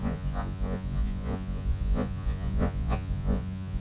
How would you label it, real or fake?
fake